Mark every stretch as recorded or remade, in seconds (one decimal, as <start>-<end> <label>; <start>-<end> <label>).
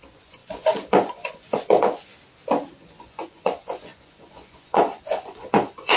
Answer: 0.0-2.1 remade; 2.1-2.8 recorded; 2.8-6.0 remade